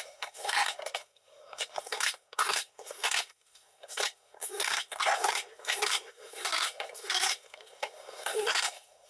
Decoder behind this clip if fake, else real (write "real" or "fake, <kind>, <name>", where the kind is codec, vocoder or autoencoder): fake, codec, SNAC